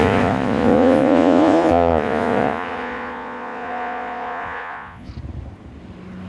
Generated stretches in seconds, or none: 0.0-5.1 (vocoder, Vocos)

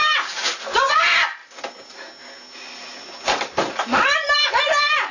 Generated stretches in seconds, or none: none

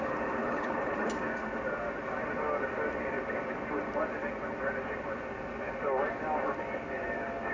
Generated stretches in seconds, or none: 0.4-1.1 (codec, HILCodec)

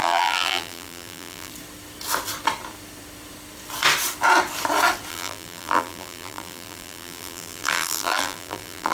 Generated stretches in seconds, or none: 0.0-1.5 (vocoder, BigVGAN v2); 5.1-8.9